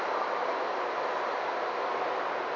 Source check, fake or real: real